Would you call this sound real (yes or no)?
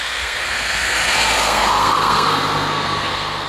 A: no